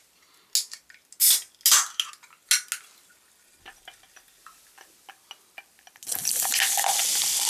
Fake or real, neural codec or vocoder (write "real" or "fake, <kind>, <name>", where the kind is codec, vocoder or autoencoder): real